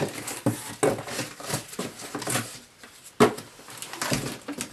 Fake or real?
real